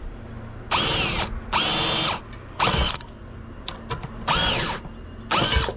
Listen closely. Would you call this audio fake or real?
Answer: real